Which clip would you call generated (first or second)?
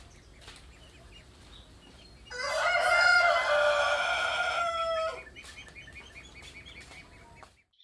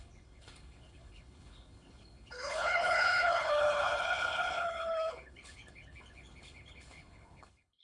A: second